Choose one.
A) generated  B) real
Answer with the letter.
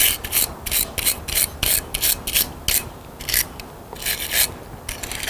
B